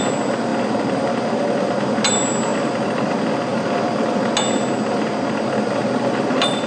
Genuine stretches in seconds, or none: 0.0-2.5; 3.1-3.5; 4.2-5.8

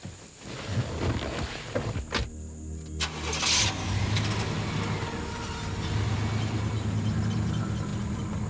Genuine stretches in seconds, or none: 0.0-8.5

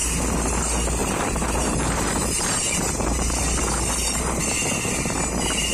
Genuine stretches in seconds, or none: 0.0-1.0; 4.4-5.7

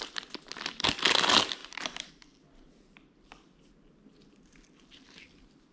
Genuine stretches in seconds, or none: 0.0-1.6; 2.1-5.7

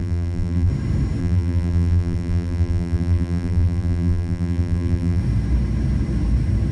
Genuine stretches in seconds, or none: 0.7-1.2; 5.2-6.7

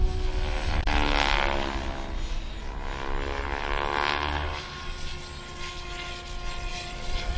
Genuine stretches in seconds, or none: 0.0-6.7